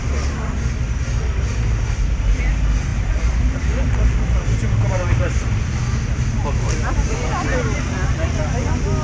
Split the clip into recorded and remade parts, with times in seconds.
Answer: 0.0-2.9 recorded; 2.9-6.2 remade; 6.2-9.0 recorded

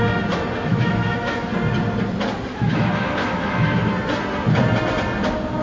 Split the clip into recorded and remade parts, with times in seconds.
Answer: 0.0-0.7 recorded; 0.7-1.5 remade; 1.5-2.5 recorded; 2.5-3.9 remade; 3.9-5.6 recorded

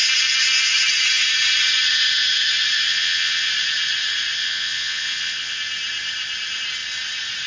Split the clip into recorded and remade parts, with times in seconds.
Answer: 0.0-2.9 recorded; 2.9-3.5 remade; 3.5-4.4 recorded; 4.4-5.6 remade; 5.6-7.5 recorded

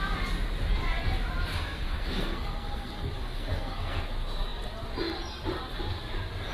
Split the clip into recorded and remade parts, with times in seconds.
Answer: 0.0-1.5 recorded; 1.5-4.0 remade; 4.0-6.5 recorded

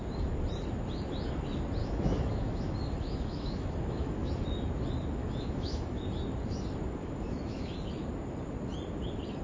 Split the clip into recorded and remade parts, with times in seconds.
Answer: 0.0-1.8 recorded; 1.8-4.3 remade; 4.3-5.2 recorded; 5.2-6.0 remade; 6.0-7.0 recorded; 7.0-7.9 remade; 7.9-9.4 recorded

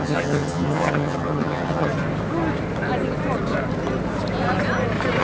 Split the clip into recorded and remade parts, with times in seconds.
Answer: 0.0-1.9 remade; 1.9-5.2 recorded